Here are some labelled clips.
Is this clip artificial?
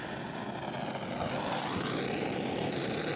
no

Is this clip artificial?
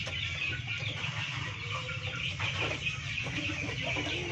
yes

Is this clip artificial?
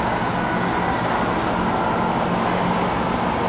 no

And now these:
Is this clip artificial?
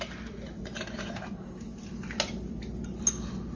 no